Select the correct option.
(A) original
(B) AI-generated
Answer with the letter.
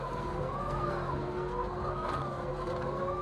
B